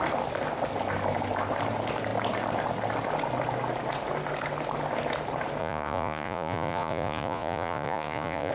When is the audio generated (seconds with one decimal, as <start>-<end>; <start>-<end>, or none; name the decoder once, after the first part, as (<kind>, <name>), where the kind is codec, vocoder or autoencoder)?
5.6-8.5 (vocoder, Vocos)